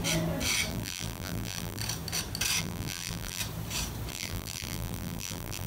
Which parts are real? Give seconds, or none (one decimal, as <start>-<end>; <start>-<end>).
0.0-0.7; 1.8-2.6; 3.4-4.1